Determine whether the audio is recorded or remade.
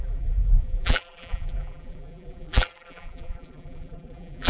remade